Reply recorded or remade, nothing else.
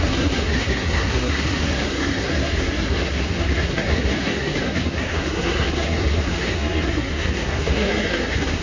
remade